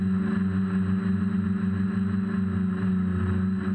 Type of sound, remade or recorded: recorded